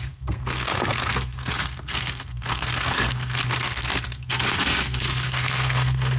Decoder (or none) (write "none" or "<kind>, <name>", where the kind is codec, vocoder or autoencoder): codec, SNAC